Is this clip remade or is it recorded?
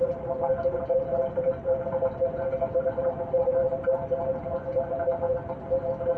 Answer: recorded